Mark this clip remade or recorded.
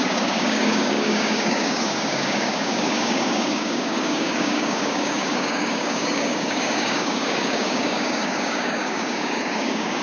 remade